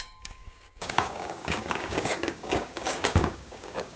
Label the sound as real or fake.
fake